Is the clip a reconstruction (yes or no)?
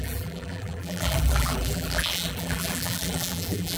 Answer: yes